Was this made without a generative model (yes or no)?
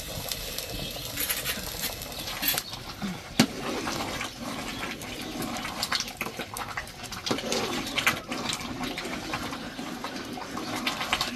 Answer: yes